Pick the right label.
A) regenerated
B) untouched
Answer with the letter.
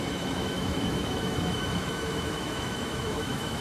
A